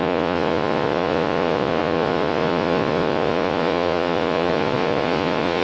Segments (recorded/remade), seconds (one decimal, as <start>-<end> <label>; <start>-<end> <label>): 0.0-5.6 remade

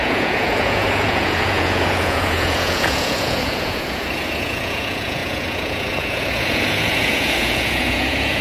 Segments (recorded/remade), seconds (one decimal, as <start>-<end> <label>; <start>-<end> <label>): 0.0-8.4 remade

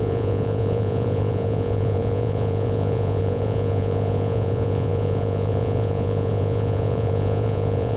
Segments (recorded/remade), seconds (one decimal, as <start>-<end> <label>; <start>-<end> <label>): 0.0-8.0 remade